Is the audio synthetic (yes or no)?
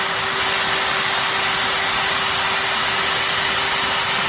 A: no